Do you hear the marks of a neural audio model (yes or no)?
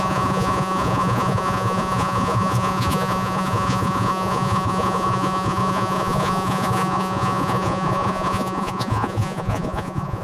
yes